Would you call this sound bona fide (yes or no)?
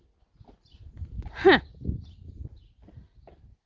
yes